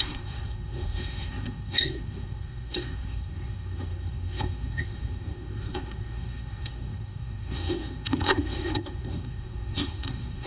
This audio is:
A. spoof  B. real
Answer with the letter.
A